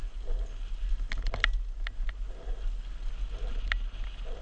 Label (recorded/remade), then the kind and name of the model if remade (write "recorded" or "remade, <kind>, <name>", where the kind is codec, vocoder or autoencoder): recorded